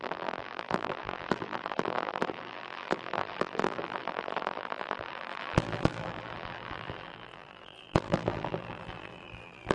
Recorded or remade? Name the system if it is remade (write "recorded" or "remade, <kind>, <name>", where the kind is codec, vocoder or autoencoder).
remade, vocoder, BigVGAN v2